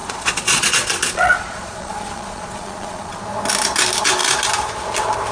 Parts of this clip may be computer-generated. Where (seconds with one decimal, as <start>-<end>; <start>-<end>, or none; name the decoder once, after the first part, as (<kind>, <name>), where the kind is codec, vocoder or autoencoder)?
0.0-3.2 (vocoder, Vocos)

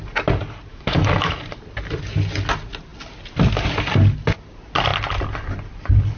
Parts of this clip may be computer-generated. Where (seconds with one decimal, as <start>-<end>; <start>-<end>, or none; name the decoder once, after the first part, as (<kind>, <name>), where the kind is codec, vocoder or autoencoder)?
0.7-1.4 (autoencoder, DAC-VAE)